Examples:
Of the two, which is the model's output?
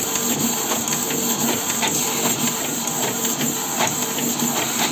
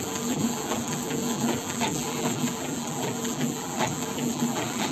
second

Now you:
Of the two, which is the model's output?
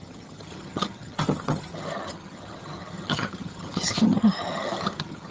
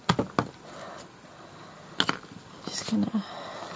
first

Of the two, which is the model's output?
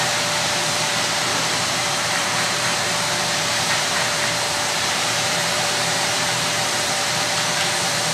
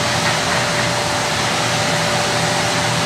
first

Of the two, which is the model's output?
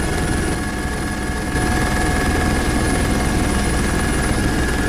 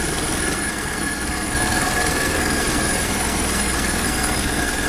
second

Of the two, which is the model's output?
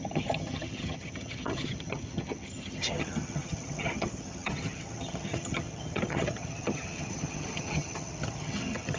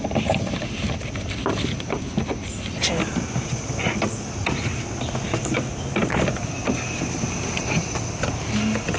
first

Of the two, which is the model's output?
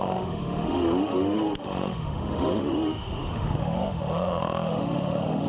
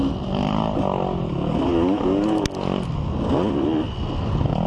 first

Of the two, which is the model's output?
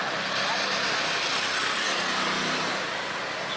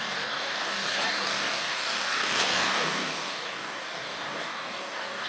second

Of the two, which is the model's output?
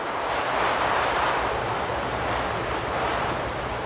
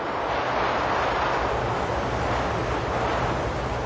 first